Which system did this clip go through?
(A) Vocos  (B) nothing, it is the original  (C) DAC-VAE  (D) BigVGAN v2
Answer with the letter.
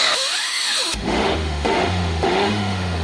C